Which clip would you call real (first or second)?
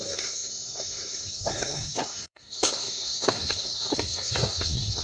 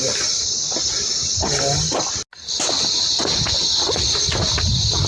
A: second